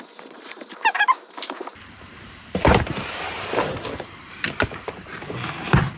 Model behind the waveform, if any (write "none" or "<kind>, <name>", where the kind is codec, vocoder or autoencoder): vocoder, BigVGAN v2